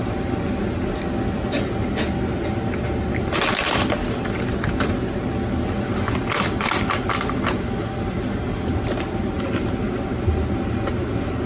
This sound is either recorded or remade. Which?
recorded